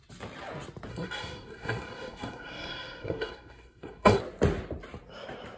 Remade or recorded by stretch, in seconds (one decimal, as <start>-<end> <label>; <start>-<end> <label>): 0.0-0.9 recorded; 0.9-4.2 remade; 4.2-5.6 recorded